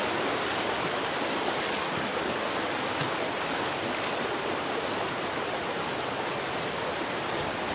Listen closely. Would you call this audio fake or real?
real